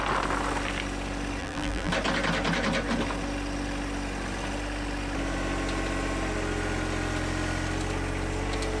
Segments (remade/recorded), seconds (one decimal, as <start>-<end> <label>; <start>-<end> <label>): 0.0-1.4 recorded; 1.4-1.9 remade; 1.9-8.8 recorded